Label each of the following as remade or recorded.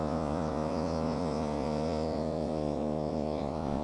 remade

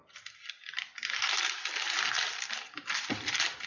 recorded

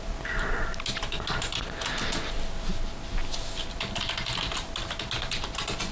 recorded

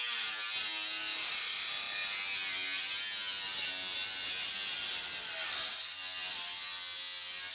recorded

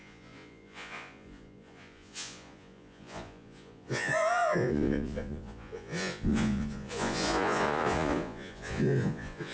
remade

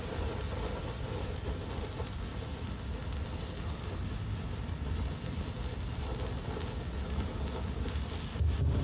recorded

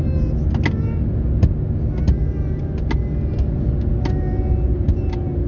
recorded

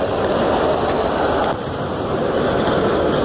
recorded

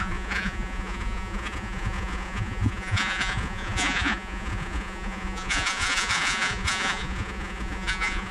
remade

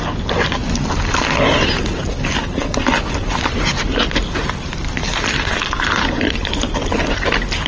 recorded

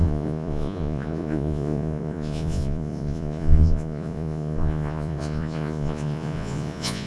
remade